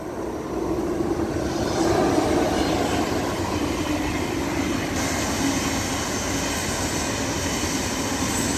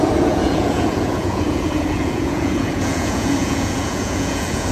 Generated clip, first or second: second